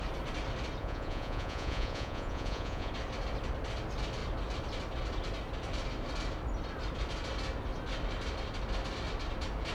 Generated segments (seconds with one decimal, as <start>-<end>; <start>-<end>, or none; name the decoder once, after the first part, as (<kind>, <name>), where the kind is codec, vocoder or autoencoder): 0.8-2.9 (vocoder, Vocos)